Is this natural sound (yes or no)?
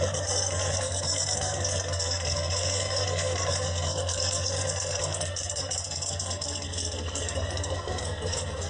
no